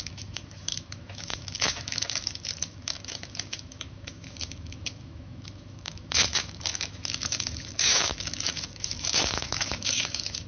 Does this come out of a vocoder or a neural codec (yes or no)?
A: yes